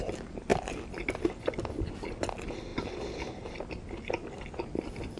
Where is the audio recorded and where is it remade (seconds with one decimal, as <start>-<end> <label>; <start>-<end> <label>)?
0.0-5.2 recorded